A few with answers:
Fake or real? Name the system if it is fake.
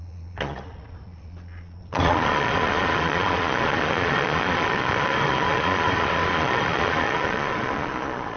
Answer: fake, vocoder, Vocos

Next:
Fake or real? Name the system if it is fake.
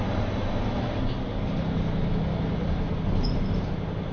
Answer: real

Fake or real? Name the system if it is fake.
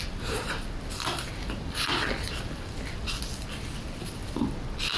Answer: real